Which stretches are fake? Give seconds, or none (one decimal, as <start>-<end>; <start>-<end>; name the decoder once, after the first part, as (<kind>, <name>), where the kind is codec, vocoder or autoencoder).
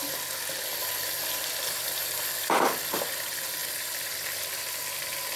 none